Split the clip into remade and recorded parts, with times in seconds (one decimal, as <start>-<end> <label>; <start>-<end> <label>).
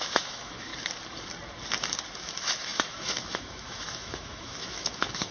0.0-0.7 remade; 0.7-2.2 recorded; 2.2-5.3 remade